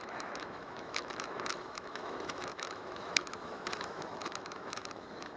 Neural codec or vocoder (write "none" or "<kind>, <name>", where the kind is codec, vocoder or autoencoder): autoencoder, DAC-VAE